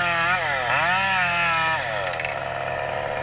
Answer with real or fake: real